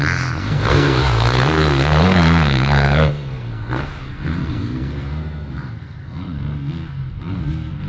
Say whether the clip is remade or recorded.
remade